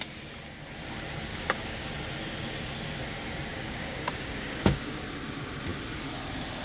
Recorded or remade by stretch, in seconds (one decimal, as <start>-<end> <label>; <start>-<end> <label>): 0.0-1.3 recorded; 1.3-1.9 remade; 1.9-3.5 recorded; 3.5-5.0 remade; 5.0-6.6 recorded